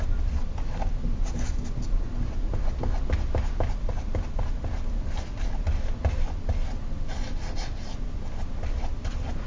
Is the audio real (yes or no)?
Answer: yes